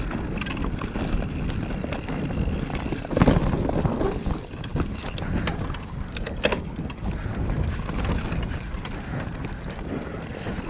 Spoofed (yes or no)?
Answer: no